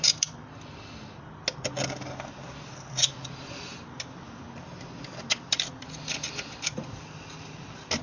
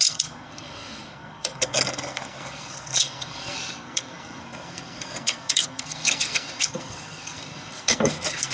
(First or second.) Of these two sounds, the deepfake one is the second